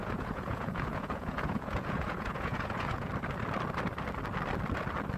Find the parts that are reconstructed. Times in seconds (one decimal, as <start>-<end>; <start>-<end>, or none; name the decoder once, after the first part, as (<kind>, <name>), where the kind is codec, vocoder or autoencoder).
0.0-3.1 (vocoder, Vocos)